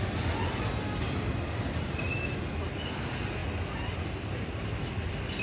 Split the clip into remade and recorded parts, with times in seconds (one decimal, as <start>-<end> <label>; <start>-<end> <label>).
0.0-5.4 recorded